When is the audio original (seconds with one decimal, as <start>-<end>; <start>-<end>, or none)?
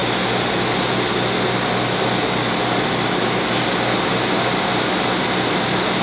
0.0-6.0